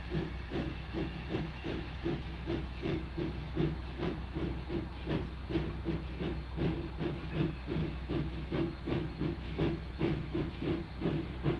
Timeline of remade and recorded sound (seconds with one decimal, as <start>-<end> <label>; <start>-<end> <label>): 0.0-0.5 recorded; 0.5-4.4 remade; 4.4-7.8 recorded; 7.8-10.5 remade; 10.5-11.6 recorded